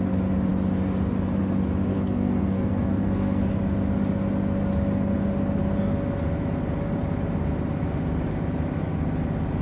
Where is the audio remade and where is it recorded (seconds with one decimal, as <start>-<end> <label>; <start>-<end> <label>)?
0.0-1.9 recorded; 1.9-3.4 remade; 3.4-9.6 recorded